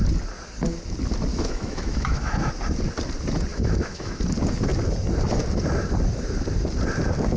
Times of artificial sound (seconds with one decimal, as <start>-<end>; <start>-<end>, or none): 1.3-2.5; 3.5-4.2